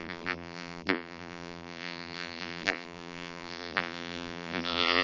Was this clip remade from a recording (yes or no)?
yes